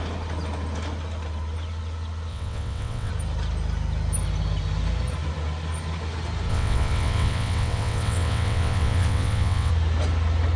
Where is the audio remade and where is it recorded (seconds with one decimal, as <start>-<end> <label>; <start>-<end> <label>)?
0.0-2.3 recorded; 2.3-3.1 remade; 3.1-6.5 recorded; 6.5-9.7 remade; 9.7-10.6 recorded